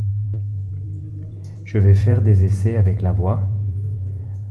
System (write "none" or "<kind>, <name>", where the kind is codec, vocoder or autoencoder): vocoder, BigVGAN v2